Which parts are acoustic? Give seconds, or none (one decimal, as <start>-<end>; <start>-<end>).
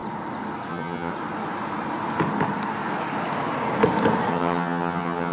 0.0-0.7; 1.1-4.3